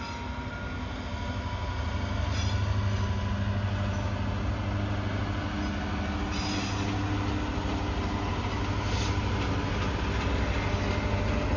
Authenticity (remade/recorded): recorded